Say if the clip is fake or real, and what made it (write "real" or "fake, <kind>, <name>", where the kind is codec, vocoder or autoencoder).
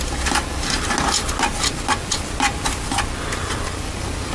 real